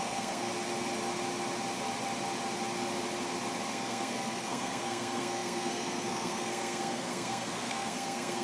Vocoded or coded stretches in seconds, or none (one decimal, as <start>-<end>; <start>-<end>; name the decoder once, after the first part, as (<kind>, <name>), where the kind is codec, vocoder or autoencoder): 0.0-0.5 (codec, SNAC); 3.7-8.4